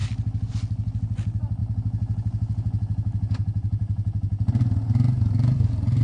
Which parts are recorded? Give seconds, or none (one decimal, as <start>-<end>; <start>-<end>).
0.0-1.6; 4.9-6.0